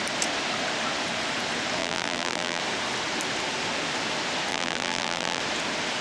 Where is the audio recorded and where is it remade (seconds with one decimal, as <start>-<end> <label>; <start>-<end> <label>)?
0.0-1.8 recorded; 1.8-2.6 remade; 2.6-4.5 recorded; 4.5-5.4 remade; 5.4-6.0 recorded